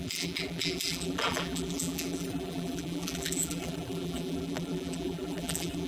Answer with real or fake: fake